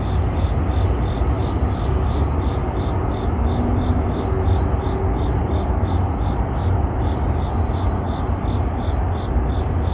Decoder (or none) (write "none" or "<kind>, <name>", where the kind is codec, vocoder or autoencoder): none